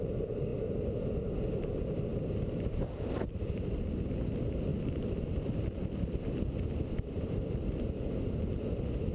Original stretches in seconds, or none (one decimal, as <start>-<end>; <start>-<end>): 0.0-0.5; 1.0-2.1; 3.8-4.7; 8.5-9.1